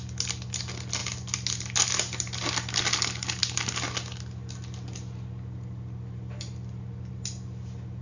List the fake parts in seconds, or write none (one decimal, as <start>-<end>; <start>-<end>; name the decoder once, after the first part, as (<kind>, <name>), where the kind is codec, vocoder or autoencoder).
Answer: none